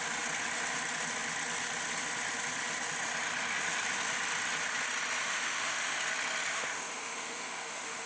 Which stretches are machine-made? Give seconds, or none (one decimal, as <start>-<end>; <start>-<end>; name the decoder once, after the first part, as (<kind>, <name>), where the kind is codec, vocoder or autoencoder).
5.2-6.0 (autoencoder, DAC-VAE); 6.5-8.1